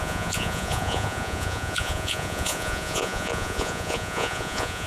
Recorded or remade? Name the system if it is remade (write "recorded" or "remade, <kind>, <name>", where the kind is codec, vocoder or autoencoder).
remade, vocoder, Vocos